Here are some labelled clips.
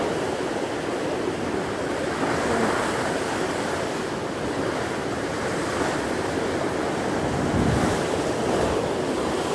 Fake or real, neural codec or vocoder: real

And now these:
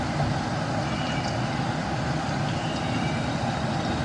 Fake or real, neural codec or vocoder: real